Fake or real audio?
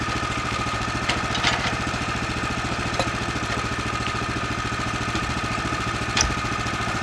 fake